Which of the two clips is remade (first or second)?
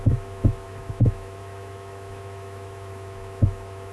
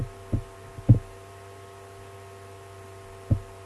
first